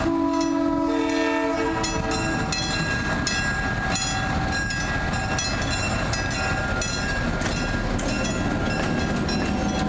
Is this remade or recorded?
recorded